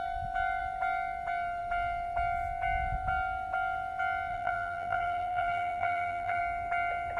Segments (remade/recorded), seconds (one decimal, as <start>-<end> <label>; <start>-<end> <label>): 0.0-4.3 recorded; 4.3-6.4 remade; 6.4-7.2 recorded